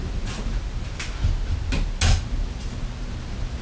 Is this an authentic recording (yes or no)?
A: yes